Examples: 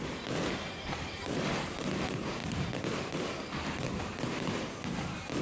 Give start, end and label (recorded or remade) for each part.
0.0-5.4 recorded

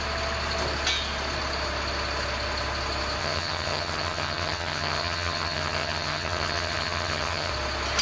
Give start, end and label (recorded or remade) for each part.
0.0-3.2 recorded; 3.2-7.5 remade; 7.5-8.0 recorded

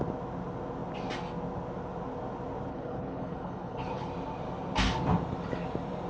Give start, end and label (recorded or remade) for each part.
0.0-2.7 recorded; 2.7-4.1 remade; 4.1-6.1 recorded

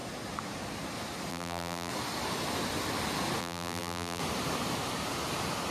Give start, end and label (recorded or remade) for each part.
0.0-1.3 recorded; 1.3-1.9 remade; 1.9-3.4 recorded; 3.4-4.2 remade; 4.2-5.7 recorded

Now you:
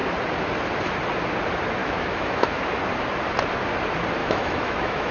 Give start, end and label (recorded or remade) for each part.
0.0-1.8 recorded; 1.8-2.6 remade; 2.6-4.2 recorded; 4.2-5.1 remade